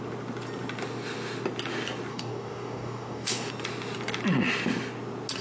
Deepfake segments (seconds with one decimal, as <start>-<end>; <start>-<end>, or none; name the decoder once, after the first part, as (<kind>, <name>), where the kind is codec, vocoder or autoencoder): 2.1-3.5 (codec, DAC)